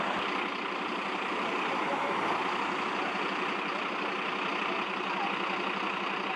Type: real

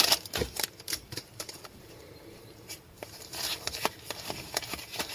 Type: fake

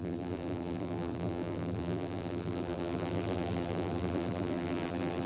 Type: fake